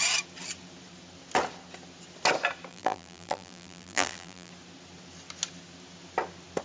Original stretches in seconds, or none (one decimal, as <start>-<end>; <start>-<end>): 0.0-2.7; 4.5-6.6